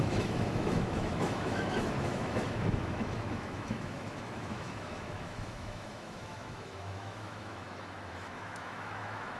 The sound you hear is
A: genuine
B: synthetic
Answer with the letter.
B